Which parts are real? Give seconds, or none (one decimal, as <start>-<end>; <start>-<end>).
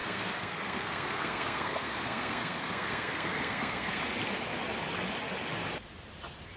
4.0-6.6